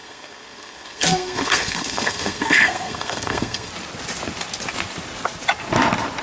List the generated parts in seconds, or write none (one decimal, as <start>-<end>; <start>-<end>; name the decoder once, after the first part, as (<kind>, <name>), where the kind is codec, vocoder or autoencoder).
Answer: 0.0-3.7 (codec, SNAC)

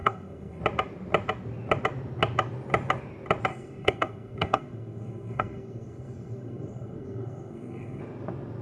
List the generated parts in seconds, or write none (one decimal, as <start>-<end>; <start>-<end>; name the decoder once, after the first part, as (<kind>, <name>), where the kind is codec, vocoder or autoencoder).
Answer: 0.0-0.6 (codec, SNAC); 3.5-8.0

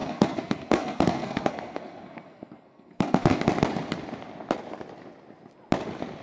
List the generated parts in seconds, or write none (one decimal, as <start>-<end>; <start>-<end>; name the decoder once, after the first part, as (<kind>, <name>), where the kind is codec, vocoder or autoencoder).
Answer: 0.0-3.4 (codec, SNAC)

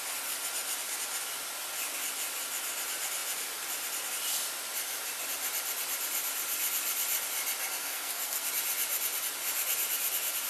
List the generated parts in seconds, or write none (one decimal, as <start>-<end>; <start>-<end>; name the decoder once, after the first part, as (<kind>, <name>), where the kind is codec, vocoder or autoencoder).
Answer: 7.8-8.5 (codec, SNAC)

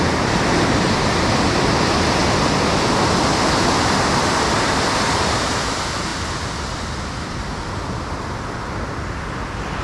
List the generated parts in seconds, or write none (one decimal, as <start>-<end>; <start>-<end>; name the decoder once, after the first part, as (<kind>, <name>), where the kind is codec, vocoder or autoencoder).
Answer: none

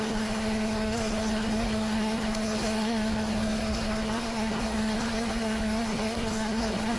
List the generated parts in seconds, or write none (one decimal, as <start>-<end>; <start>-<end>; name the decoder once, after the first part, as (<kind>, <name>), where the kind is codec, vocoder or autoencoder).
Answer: 0.0-7.0 (codec, SNAC)